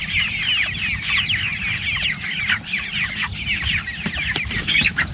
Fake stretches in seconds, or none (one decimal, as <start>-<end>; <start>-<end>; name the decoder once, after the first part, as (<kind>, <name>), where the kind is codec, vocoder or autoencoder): 1.5-4.6 (vocoder, BigVGAN v2)